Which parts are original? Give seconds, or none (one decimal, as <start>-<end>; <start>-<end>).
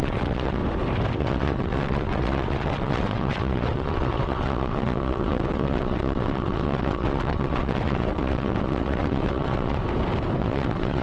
0.6-1.2; 9.8-10.4